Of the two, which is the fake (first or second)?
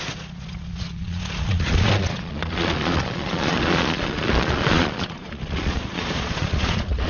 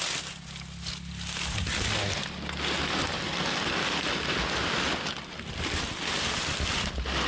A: first